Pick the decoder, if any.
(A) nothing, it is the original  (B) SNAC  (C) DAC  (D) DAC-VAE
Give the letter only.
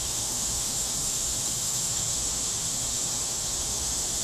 D